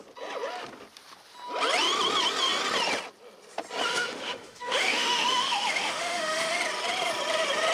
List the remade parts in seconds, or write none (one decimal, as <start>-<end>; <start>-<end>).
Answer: 3.9-6.6